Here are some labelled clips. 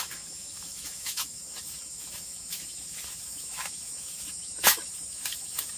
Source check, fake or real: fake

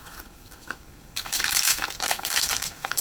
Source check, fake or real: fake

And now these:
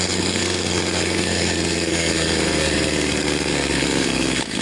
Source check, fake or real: fake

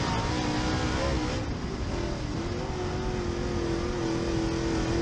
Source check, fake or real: real